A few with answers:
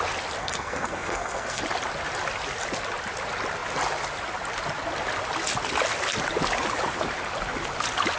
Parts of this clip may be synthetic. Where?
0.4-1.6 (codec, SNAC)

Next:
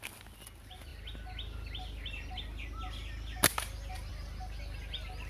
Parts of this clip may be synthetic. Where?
none

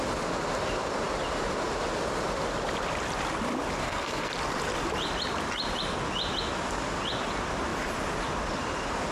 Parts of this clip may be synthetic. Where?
3.8-4.3 (codec, SNAC)

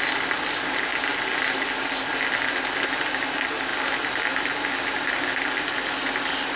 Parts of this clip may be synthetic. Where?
none

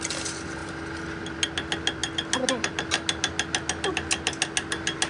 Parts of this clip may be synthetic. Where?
none